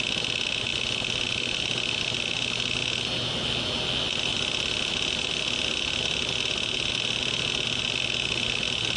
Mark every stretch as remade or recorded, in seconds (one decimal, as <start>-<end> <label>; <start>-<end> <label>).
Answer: 0.0-9.0 recorded